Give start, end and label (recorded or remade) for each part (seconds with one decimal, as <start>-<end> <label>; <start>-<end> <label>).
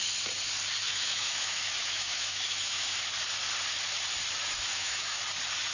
0.0-0.8 recorded; 0.8-2.9 remade; 2.9-4.7 recorded; 4.7-5.2 remade; 5.2-5.7 recorded